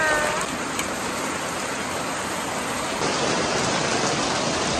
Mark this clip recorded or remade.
recorded